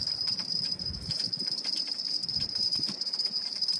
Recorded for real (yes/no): no